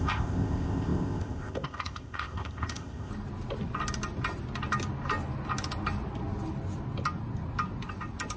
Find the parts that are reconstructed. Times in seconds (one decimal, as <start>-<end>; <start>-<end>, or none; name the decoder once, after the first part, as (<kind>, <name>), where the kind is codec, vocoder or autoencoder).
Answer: 0.0-3.1 (codec, ZipCodec)